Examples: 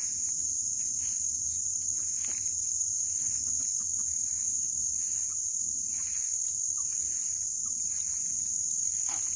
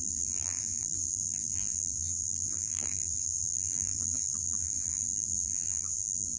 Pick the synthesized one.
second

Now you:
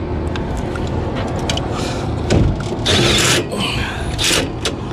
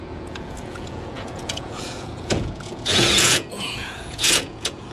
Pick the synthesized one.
second